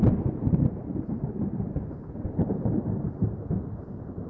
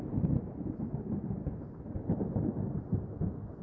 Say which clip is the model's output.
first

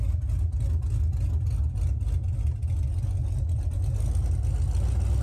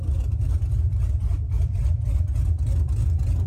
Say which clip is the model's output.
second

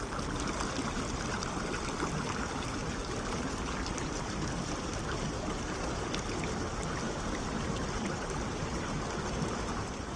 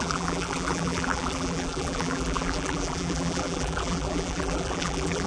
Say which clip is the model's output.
second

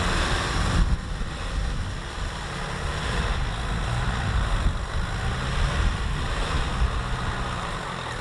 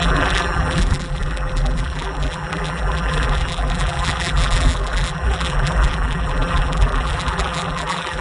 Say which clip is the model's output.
second